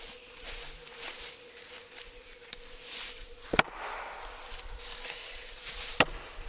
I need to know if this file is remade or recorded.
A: recorded